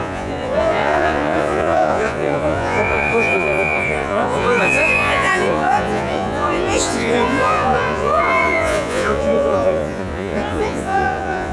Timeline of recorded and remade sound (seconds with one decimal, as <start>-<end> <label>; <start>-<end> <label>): 0.0-11.5 remade